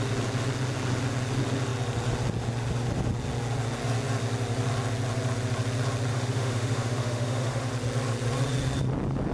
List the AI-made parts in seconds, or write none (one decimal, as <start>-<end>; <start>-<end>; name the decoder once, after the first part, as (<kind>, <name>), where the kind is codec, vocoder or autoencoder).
6.1-7.7 (autoencoder, DAC-VAE)

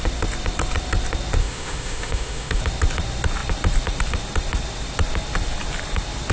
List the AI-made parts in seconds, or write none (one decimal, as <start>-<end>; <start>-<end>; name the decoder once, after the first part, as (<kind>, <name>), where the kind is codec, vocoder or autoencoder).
1.4-2.6 (autoencoder, DAC-VAE)

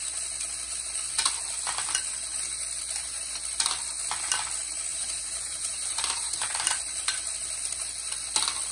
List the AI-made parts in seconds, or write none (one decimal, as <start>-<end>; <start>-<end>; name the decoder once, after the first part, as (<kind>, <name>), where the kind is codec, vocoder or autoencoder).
4.9-6.8 (vocoder, BigVGAN v2)

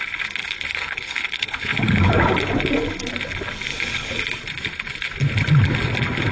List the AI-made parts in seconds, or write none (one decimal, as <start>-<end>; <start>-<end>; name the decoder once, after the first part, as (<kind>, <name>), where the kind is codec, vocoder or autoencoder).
0.4-2.1 (codec, HILCodec); 3.7-4.2

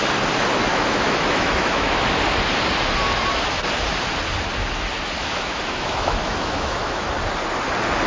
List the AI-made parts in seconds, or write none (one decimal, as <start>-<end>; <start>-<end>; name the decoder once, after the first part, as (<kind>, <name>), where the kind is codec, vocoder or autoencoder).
0.7-2.2 (autoencoder, DAC-VAE); 5.2-7.1

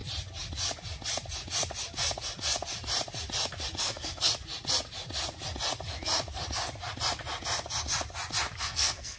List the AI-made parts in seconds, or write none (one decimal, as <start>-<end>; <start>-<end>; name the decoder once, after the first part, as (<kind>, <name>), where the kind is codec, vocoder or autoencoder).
3.8-4.3 (codec, SNAC); 8.6-9.2

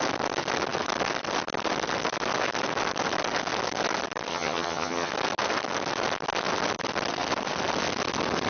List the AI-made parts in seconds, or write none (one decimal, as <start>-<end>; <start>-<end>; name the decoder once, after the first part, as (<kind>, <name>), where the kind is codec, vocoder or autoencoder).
4.3-5.1 (vocoder, HiFi-GAN)

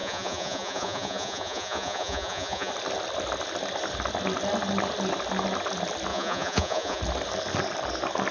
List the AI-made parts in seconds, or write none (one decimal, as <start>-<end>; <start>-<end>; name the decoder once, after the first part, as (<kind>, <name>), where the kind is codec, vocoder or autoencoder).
0.0-2.7 (vocoder, Vocos); 6.1-7.0